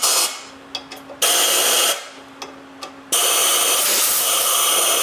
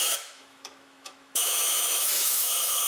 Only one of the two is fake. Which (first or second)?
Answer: second